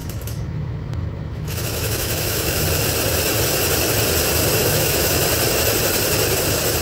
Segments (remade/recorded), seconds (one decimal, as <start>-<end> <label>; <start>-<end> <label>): 0.0-2.6 remade; 2.6-4.6 recorded; 4.6-5.2 remade; 5.2-6.8 recorded

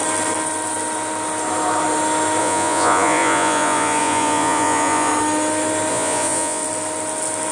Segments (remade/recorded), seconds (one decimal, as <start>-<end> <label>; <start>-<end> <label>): 0.0-2.4 recorded; 2.4-5.1 remade; 5.1-5.9 recorded; 5.9-6.6 remade; 6.6-7.5 recorded

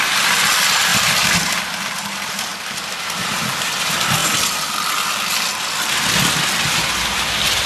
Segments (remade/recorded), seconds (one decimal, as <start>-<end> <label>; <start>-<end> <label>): 0.0-7.7 recorded

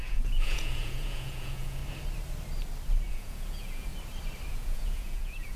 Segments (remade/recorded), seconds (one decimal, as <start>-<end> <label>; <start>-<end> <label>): 0.0-1.8 remade; 1.8-3.1 recorded; 3.1-3.9 remade; 3.9-4.5 recorded; 4.5-5.6 remade